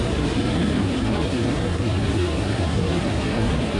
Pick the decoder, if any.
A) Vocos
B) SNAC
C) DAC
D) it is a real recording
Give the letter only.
B